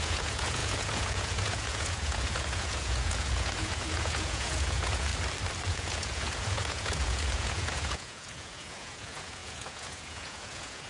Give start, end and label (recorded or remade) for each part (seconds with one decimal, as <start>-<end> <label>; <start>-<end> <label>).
0.0-5.1 remade; 5.1-5.7 recorded; 5.7-10.9 remade

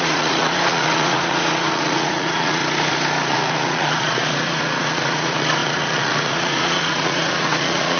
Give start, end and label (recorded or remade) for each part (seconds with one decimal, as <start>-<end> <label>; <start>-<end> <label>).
0.0-2.6 remade; 2.6-3.3 recorded; 3.3-8.0 remade

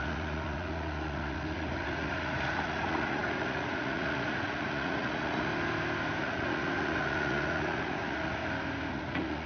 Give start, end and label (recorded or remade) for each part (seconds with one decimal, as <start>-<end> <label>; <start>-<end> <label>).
0.0-5.5 remade; 5.5-6.2 recorded; 6.2-8.4 remade; 8.4-8.9 recorded; 8.9-9.5 remade

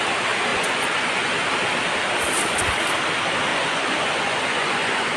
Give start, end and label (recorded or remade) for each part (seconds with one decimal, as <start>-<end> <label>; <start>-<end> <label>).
0.0-0.5 recorded; 0.5-1.3 remade; 1.3-3.5 recorded; 3.5-5.2 remade

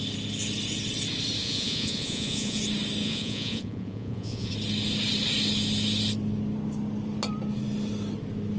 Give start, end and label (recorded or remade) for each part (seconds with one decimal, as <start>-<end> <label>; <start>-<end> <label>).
0.0-1.4 recorded; 1.4-2.6 remade; 2.6-3.0 recorded; 3.0-4.5 remade; 4.5-8.6 recorded

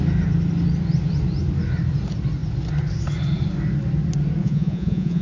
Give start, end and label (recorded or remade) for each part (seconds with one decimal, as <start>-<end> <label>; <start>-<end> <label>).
0.0-4.4 recorded; 4.4-5.2 remade

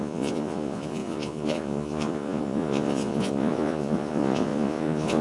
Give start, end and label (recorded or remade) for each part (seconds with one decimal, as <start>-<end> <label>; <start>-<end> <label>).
0.0-5.2 remade